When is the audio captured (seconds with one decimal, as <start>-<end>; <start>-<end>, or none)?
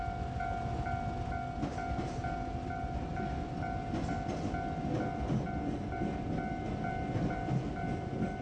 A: 0.0-8.4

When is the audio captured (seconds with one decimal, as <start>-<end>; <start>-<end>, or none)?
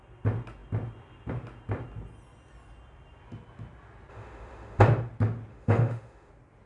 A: 0.0-4.1; 4.8-5.5; 6.3-6.7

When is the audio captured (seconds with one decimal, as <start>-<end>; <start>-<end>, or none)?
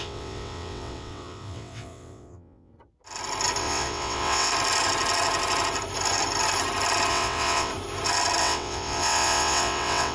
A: 2.7-3.6; 4.5-7.1; 7.7-8.4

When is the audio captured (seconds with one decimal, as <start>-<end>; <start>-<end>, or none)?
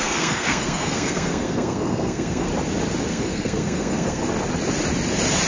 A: 2.5-3.1; 4.2-5.5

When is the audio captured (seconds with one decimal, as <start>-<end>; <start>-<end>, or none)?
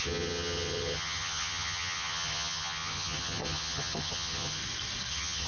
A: 4.6-5.1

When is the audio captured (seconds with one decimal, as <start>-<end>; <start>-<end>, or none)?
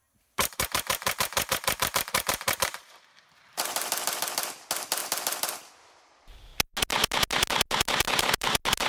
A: 3.9-8.9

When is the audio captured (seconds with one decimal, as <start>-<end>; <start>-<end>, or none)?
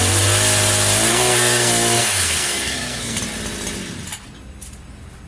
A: 0.0-1.1; 3.2-5.3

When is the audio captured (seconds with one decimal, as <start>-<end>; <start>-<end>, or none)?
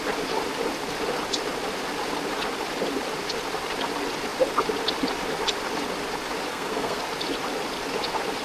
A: 0.0-6.5; 7.0-8.4